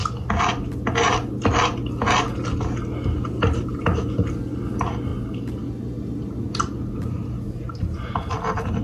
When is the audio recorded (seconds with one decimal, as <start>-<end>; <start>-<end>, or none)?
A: 0.0-8.8

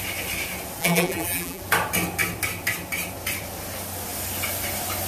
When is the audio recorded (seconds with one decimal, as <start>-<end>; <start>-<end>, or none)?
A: 0.0-0.8; 1.6-5.1